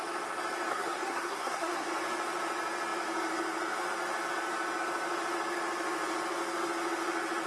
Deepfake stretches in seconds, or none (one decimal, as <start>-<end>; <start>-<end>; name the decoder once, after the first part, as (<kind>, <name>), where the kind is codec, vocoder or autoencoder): 0.7-1.9 (codec, SNAC)